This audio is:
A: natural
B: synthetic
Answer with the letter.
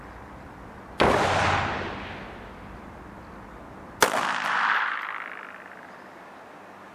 A